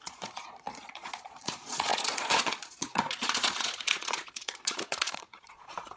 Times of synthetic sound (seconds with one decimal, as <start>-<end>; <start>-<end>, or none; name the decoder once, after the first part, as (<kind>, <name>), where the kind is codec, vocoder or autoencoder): 0.0-6.0 (vocoder, Vocos)